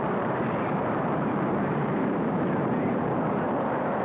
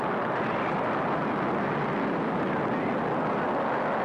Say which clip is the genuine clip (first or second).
second